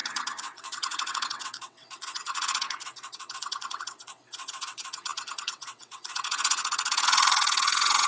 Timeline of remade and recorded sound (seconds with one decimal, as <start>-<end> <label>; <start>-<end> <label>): 0.0-8.1 remade